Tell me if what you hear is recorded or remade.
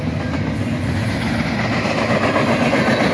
recorded